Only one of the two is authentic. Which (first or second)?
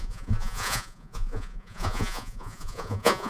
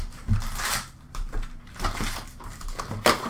second